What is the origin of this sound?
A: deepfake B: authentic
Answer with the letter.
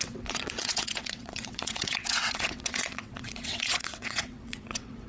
A